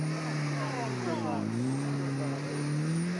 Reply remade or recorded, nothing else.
recorded